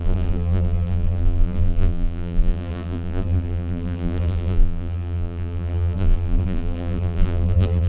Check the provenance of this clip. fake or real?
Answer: fake